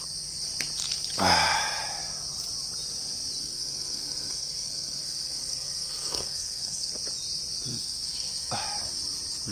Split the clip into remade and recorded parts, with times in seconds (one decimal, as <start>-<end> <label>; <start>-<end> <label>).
0.0-3.4 recorded; 3.4-6.9 remade; 6.9-7.7 recorded; 7.7-8.5 remade; 8.5-9.5 recorded